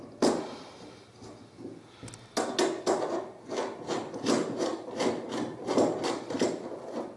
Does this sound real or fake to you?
real